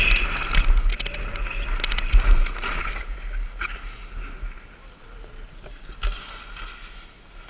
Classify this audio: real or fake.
real